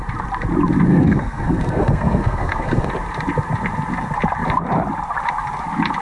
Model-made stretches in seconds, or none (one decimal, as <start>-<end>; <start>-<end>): 0.9-2.9